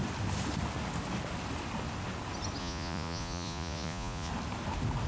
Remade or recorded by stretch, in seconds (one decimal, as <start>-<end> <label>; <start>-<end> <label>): 0.0-2.6 recorded; 2.6-4.3 remade; 4.3-5.1 recorded